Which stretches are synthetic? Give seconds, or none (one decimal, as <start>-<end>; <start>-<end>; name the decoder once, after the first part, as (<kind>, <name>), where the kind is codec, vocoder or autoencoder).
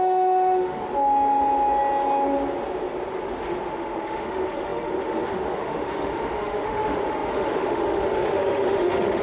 0.0-0.8 (autoencoder, DAC-VAE); 3.7-9.2